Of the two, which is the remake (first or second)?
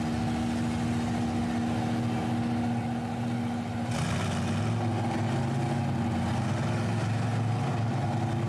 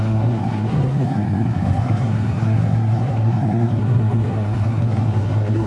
second